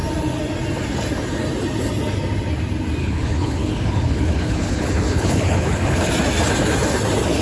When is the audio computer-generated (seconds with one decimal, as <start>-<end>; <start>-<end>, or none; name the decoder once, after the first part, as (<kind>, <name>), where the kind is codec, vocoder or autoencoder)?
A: 3.0-6.1 (codec, HILCodec)